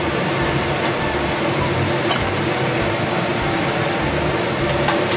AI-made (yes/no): yes